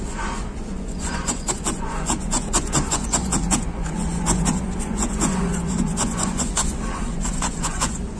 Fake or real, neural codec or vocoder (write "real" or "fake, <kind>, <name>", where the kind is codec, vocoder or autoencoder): fake, vocoder, Vocos